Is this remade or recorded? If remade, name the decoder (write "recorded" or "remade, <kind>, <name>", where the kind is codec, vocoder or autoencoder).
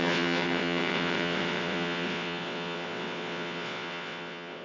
remade, vocoder, WaveNeXt